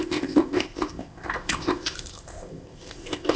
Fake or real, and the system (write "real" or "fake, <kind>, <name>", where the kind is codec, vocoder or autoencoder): fake, codec, ZipCodec